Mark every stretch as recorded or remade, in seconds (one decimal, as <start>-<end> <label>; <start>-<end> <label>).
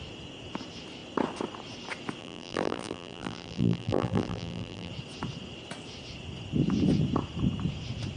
0.0-2.2 recorded; 2.2-4.9 remade; 4.9-8.2 recorded